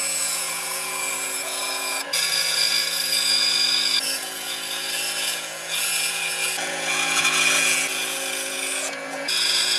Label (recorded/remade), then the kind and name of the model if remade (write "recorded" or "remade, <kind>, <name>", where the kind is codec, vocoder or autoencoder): remade, vocoder, Vocos